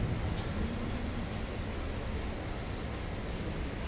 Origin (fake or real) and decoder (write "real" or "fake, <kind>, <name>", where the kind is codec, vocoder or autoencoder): real